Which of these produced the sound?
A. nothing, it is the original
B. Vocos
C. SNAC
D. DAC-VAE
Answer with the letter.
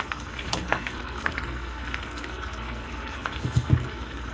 C